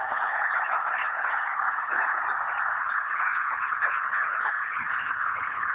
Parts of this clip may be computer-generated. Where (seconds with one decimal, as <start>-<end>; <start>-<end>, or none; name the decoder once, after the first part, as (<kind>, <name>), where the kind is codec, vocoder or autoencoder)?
0.0-2.2 (codec, HILCodec); 2.8-5.7